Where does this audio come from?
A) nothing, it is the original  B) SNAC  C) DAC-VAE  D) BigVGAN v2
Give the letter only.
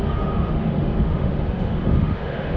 C